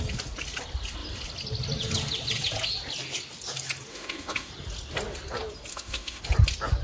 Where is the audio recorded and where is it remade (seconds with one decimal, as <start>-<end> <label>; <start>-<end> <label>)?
0.0-3.9 recorded; 3.9-4.5 remade; 4.5-5.7 recorded; 5.7-6.2 remade; 6.2-6.8 recorded